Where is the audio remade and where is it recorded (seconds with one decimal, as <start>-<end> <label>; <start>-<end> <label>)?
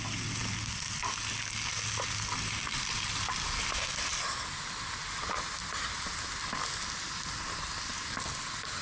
0.0-8.8 recorded